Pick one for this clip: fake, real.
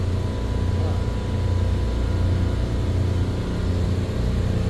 real